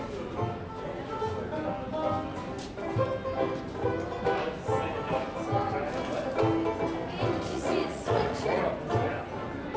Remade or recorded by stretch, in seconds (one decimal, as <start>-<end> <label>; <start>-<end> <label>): 0.0-7.5 recorded; 7.5-8.7 remade; 8.7-9.8 recorded